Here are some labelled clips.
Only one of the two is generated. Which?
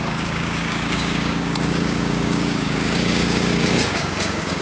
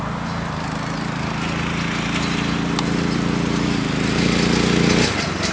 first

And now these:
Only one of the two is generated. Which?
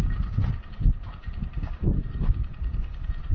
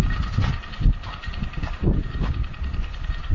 second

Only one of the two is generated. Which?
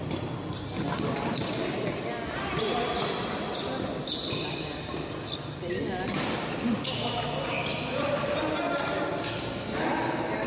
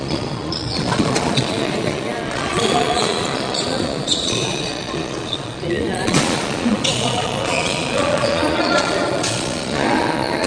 second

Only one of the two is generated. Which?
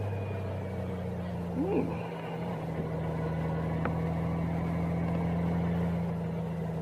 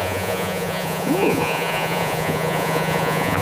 second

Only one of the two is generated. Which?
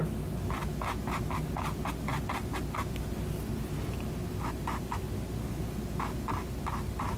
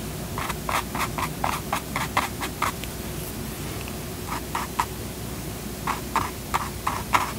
second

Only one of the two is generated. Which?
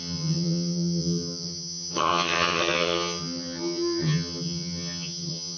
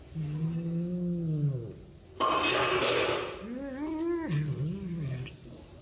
first